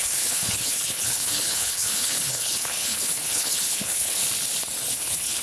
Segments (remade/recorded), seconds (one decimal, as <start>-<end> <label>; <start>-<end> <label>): 0.0-4.2 remade; 4.2-4.9 recorded; 4.9-5.4 remade